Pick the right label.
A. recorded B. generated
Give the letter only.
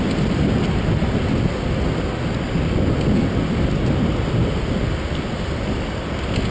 A